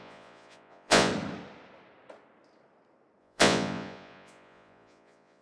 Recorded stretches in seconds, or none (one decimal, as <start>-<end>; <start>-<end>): 1.1-3.2